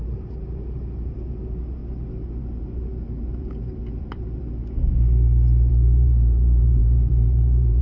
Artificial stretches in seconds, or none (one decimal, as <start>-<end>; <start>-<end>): 0.0-1.8; 2.6-4.6; 5.7-7.8